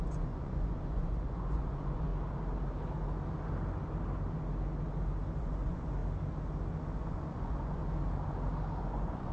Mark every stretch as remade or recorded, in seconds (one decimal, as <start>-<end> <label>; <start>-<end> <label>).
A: 0.0-2.1 remade; 2.1-5.4 recorded; 5.4-6.0 remade; 6.0-7.0 recorded; 7.0-7.8 remade; 7.8-8.8 recorded; 8.8-9.3 remade